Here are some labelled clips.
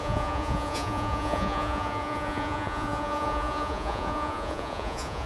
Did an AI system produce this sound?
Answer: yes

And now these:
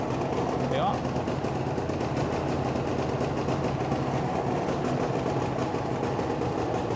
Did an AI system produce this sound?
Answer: no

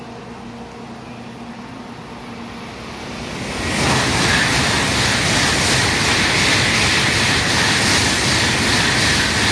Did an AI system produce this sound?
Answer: no